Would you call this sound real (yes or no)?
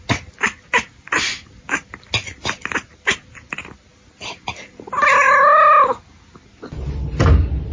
yes